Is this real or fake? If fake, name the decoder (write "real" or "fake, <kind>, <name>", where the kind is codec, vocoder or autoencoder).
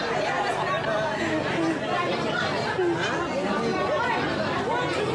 real